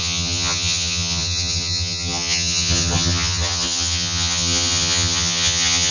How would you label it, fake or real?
fake